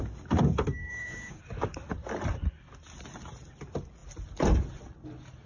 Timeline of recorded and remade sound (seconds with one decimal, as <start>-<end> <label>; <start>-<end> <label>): 0.0-0.8 recorded; 0.8-1.4 remade; 1.4-5.5 recorded